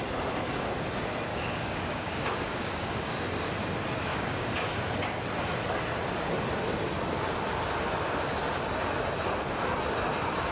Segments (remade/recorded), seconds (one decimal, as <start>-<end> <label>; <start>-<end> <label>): 0.0-1.3 recorded; 1.3-3.1 remade; 3.1-4.1 recorded; 4.1-4.7 remade; 4.7-10.5 recorded